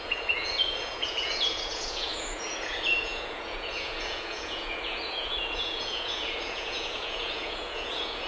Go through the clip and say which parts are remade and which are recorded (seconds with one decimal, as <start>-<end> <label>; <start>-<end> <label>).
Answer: 0.0-8.3 remade